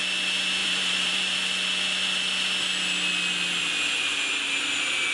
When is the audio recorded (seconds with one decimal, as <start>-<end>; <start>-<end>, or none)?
0.0-0.6; 1.4-5.1